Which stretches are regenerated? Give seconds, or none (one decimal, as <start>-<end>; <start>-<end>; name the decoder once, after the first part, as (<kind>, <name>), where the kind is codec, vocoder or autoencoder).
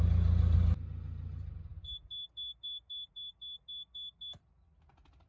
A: none